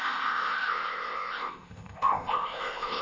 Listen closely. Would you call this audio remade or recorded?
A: remade